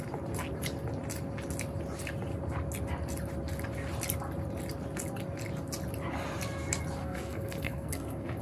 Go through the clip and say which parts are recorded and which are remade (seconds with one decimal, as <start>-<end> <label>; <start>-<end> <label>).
0.0-7.0 recorded; 7.0-8.4 remade